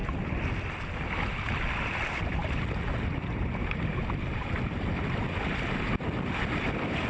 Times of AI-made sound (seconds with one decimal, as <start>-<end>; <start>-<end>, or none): none